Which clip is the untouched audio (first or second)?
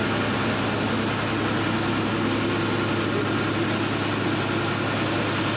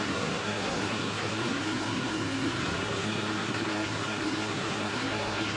first